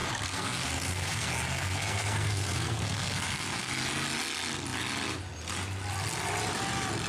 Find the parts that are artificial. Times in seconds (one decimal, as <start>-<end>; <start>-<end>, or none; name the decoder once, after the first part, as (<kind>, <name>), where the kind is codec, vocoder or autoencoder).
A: 0.0-3.7 (codec, SNAC)